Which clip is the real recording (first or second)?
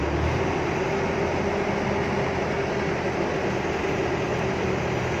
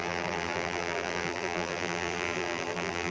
first